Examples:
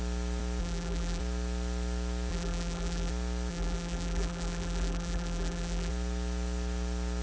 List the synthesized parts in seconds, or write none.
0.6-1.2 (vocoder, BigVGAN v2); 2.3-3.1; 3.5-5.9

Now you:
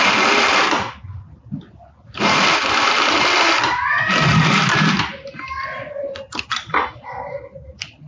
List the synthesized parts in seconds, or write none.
none

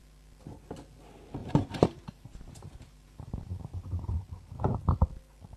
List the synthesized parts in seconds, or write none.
1.4-4.8 (vocoder, BigVGAN v2)

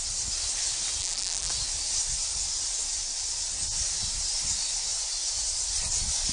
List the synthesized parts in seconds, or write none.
1.0-1.5 (vocoder, BigVGAN v2)

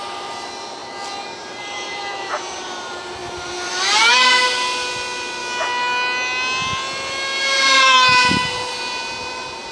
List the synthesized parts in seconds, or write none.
0.0-5.4 (vocoder, BigVGAN v2); 7.4-9.7

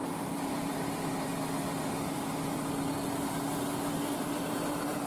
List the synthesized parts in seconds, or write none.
0.0-1.3 (vocoder, BigVGAN v2); 4.4-5.1